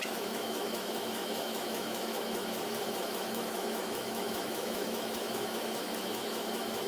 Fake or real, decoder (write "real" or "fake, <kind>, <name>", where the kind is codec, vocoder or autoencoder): fake, autoencoder, DAC-VAE